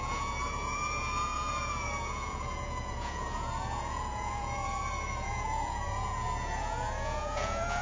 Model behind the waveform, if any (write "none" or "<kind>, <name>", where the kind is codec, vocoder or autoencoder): vocoder, Vocos